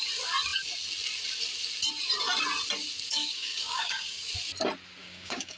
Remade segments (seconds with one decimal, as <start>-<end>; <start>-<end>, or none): 3.1-4.3; 5.0-5.6

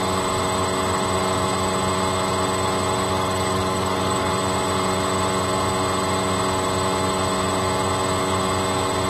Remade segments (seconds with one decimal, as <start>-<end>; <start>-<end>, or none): 3.1-4.3